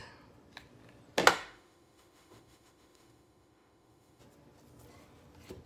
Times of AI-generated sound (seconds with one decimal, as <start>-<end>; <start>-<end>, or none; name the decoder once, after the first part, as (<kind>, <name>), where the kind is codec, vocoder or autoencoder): 1.3-4.2 (autoencoder, DAC-VAE)